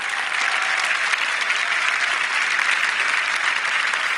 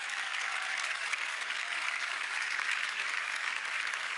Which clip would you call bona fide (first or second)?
first